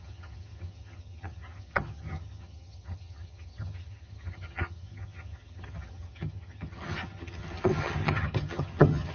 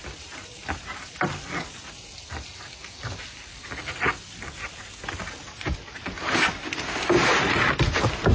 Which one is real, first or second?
second